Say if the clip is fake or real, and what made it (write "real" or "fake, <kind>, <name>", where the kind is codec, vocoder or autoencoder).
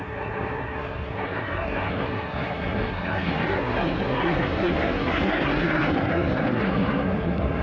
fake, codec, SNAC